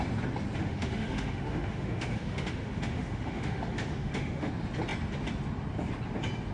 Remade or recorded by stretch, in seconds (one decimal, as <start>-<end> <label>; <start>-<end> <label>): 0.0-0.6 recorded; 0.6-4.5 remade; 4.5-6.5 recorded

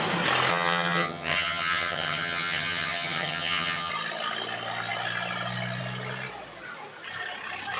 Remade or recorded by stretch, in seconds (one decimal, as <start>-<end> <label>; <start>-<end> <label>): 0.0-0.5 recorded; 0.5-3.9 remade; 3.9-7.8 recorded

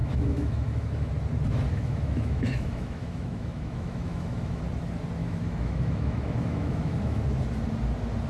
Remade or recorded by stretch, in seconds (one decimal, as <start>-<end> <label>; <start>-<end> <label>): 0.0-1.1 remade; 1.1-1.7 recorded; 1.7-4.6 remade; 4.6-5.2 recorded; 5.2-7.2 remade; 7.2-8.3 recorded

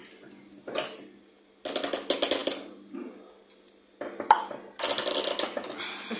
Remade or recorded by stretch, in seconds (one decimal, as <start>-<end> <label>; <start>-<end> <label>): 0.0-6.2 recorded